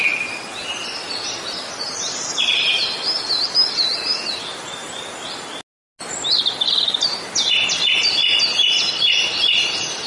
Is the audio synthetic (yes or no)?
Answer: no